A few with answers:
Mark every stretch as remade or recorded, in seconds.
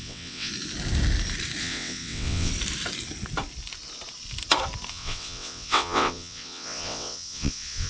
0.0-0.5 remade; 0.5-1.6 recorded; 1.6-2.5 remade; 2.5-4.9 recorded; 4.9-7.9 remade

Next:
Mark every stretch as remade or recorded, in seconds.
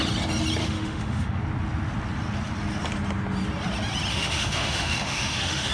0.0-0.6 recorded; 0.6-1.4 remade; 1.4-4.1 recorded; 4.1-5.7 remade